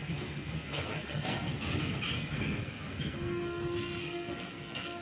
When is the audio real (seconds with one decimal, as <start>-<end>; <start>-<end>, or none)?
none